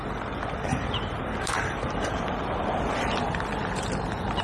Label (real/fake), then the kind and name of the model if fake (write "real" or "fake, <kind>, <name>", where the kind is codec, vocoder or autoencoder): fake, vocoder, BigVGAN v2